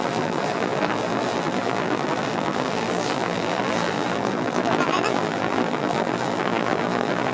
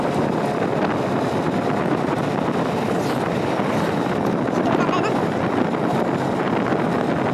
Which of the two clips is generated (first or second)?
first